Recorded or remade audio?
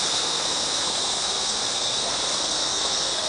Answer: remade